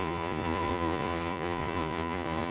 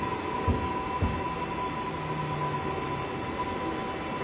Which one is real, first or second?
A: second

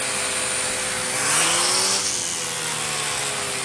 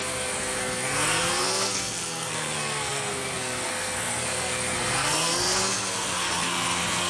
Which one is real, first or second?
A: first